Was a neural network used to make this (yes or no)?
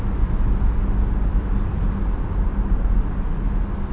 no